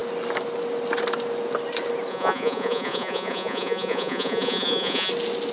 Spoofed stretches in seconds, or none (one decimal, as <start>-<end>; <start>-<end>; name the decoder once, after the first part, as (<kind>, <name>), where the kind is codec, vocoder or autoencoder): 2.1-5.1 (vocoder, Vocos)